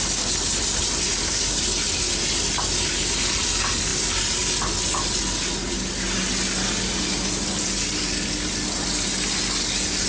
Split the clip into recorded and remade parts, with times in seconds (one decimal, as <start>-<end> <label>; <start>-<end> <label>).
0.0-10.1 recorded